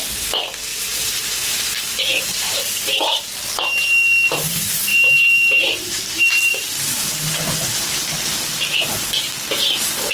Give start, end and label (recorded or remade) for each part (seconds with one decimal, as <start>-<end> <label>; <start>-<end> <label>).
0.0-0.7 recorded; 0.7-2.3 remade; 2.3-4.9 recorded; 4.9-6.5 remade; 6.5-10.1 recorded